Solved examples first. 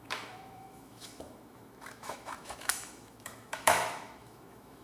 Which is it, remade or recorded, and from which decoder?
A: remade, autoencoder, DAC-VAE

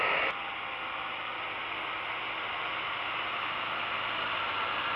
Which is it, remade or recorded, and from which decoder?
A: recorded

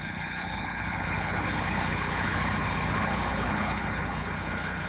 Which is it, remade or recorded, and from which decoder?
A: remade, codec, HILCodec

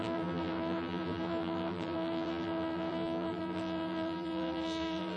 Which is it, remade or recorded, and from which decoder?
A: remade, vocoder, BigVGAN v2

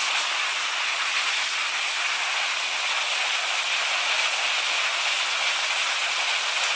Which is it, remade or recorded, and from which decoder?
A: recorded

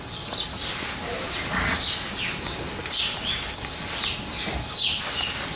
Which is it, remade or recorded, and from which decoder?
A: recorded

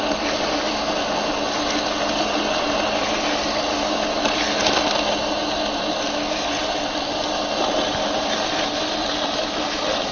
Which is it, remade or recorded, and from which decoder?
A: recorded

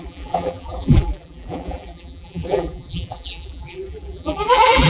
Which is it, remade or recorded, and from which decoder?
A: remade, vocoder, BigVGAN v2